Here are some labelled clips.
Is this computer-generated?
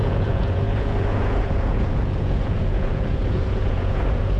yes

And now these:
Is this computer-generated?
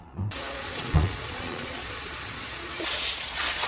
yes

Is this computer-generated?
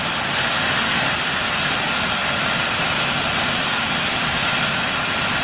no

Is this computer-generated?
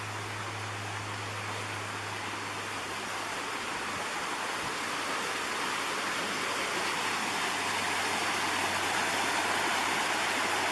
no